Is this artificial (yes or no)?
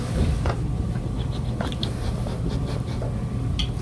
no